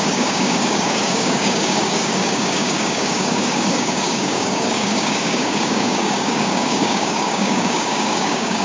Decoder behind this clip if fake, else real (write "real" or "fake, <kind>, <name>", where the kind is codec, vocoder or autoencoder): fake, codec, DAC